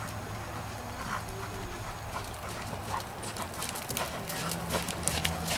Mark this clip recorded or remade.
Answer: recorded